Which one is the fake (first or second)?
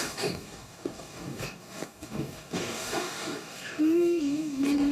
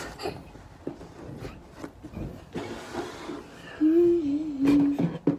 first